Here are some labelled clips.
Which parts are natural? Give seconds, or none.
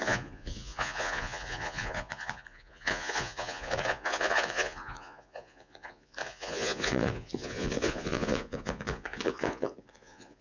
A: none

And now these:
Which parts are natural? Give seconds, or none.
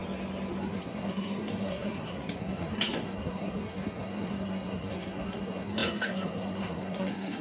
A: 0.0-0.6